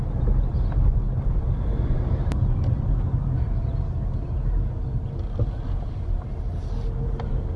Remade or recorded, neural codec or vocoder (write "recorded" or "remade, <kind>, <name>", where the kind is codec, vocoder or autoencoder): recorded